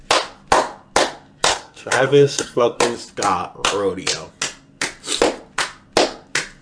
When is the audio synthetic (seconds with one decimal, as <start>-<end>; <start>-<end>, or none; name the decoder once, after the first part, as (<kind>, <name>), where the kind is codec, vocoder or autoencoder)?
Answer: 1.5-2.8 (codec, SNAC)